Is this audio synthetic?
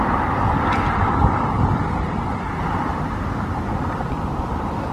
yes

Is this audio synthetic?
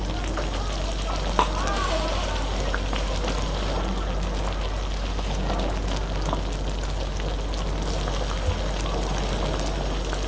no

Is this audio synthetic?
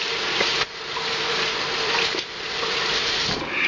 yes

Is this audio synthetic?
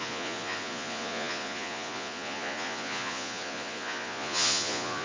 yes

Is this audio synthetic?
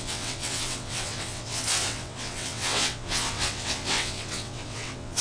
yes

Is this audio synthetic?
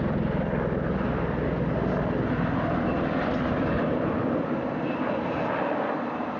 no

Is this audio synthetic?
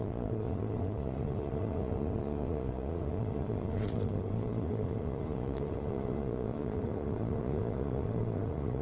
yes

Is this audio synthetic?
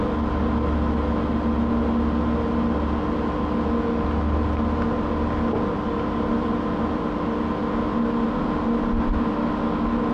no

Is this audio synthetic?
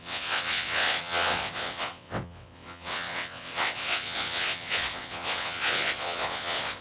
yes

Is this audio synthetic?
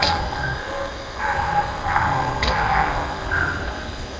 yes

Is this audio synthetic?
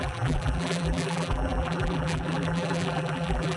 yes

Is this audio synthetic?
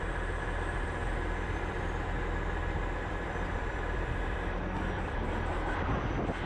yes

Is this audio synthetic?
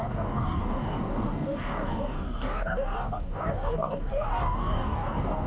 yes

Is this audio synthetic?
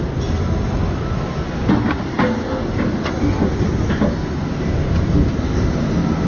no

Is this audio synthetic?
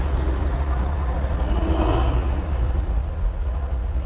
yes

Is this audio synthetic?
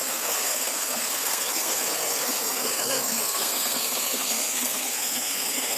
yes